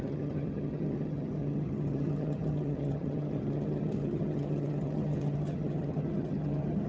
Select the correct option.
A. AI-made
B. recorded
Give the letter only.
A